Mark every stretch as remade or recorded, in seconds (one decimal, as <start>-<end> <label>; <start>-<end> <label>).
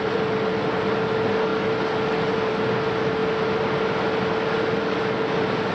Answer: 0.0-5.7 recorded